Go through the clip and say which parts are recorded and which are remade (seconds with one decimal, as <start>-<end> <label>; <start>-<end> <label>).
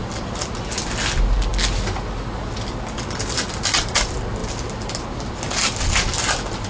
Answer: 0.0-6.7 recorded